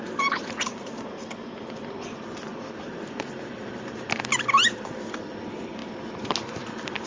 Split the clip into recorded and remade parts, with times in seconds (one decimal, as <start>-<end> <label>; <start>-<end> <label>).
0.0-0.9 remade; 0.9-1.9 recorded; 1.9-5.8 remade; 5.8-6.5 recorded; 6.5-7.1 remade